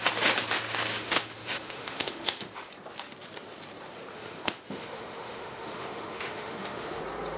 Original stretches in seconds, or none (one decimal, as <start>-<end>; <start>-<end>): 0.0-0.9; 2.7-4.1; 7.0-7.4